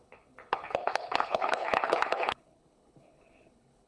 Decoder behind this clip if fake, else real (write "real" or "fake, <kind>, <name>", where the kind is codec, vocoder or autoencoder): fake, codec, HILCodec